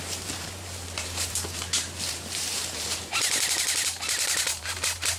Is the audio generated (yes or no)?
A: yes